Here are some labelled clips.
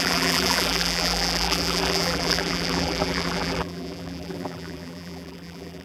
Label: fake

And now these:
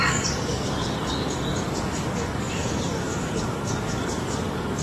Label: fake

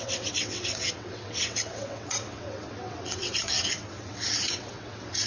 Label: fake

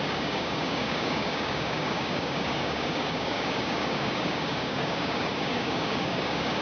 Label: fake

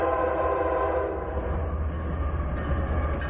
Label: real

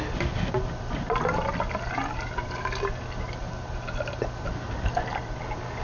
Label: real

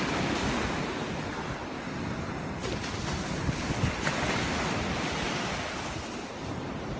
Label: real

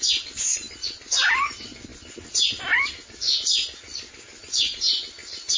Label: real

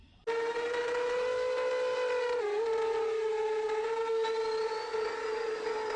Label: real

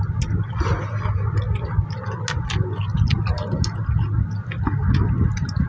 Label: real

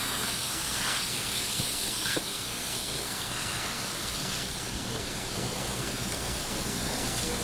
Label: fake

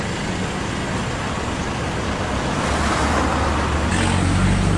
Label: real